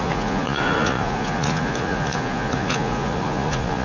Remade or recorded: remade